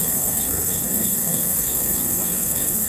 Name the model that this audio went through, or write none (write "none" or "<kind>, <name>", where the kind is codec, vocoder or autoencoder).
codec, SNAC